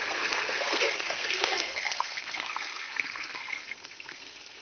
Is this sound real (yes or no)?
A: no